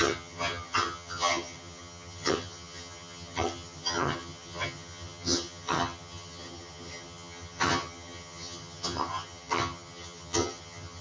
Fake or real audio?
fake